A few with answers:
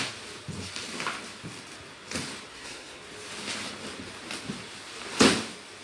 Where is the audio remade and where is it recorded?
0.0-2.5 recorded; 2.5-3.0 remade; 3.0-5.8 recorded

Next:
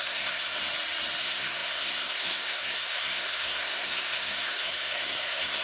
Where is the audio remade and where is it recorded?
0.0-0.6 remade; 0.6-1.2 recorded; 1.2-5.6 remade